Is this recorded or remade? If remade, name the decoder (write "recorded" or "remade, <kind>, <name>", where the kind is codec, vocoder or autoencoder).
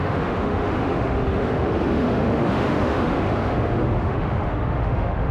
remade, autoencoder, DAC-VAE